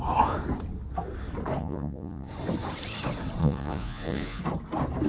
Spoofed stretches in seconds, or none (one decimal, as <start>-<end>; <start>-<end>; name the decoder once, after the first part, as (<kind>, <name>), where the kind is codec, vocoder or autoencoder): 1.6-2.3 (vocoder, Vocos); 3.4-4.4